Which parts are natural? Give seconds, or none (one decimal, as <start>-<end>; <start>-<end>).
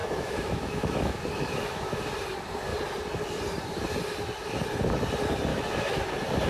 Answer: 2.0-5.5; 6.1-6.5